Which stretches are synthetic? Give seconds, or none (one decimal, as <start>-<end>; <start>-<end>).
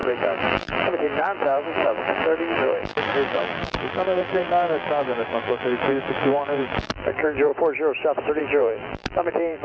0.0-7.5; 8.4-9.6